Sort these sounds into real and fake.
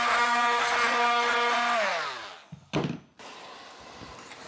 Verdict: real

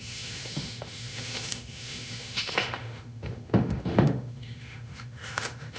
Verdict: fake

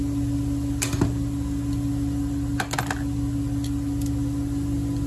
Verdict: real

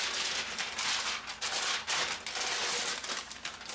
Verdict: real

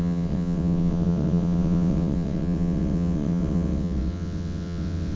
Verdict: fake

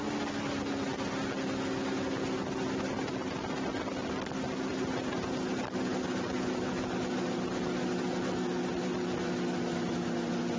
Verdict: real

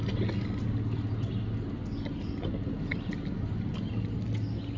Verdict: real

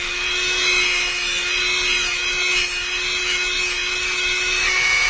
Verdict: fake